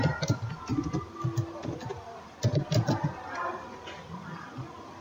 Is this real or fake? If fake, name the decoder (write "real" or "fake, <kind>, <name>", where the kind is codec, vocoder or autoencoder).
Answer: real